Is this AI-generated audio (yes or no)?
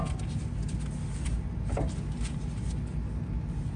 no